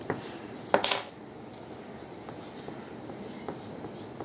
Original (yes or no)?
yes